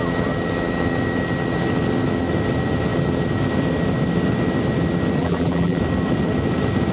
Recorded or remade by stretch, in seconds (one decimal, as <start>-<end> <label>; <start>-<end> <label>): 0.0-5.2 recorded; 5.2-5.8 remade; 5.8-6.9 recorded